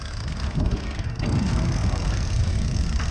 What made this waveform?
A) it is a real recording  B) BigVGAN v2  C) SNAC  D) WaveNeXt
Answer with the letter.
C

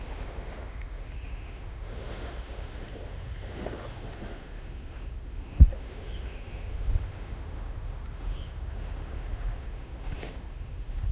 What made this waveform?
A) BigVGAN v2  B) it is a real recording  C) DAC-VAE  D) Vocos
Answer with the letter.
C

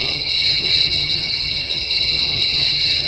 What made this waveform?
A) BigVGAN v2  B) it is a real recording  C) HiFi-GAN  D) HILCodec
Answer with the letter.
C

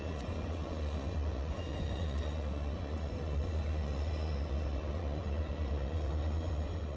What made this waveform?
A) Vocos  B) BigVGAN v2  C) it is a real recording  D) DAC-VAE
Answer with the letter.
A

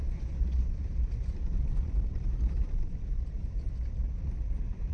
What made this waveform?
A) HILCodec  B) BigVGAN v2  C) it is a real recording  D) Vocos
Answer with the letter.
B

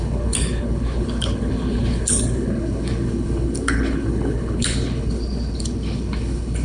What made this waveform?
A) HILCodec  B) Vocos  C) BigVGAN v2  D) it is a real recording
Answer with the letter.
A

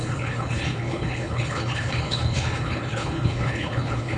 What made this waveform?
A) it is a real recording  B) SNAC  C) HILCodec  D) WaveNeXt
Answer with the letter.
C